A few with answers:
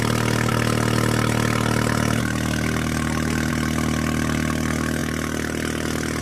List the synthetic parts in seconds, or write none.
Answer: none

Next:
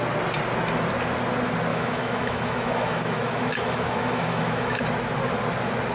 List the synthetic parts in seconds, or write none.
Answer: 1.7-4.8 (autoencoder, DAC-VAE)

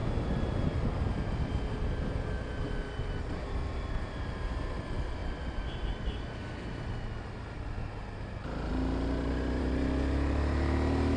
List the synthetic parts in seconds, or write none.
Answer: none

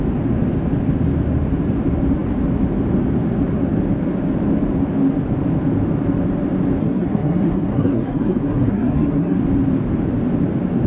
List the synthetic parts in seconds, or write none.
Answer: 6.8-9.4 (codec, SNAC)

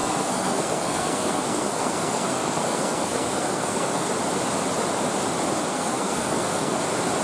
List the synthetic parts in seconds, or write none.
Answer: 0.0-4.1 (codec, SNAC); 5.7-6.8